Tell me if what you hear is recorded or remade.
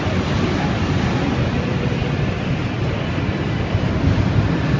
recorded